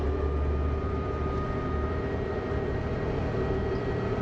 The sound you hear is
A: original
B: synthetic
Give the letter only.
B